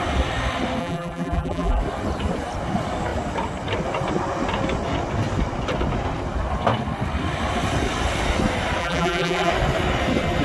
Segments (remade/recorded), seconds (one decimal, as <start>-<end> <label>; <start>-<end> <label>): 0.0-0.8 recorded; 0.8-1.8 remade; 1.8-8.8 recorded; 8.8-9.5 remade; 9.5-10.4 recorded